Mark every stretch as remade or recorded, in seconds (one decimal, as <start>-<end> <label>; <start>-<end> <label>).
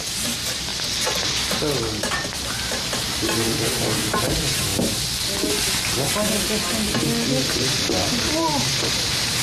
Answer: 0.0-0.7 remade; 0.7-1.8 recorded; 1.8-4.7 remade; 4.7-7.4 recorded; 7.4-9.4 remade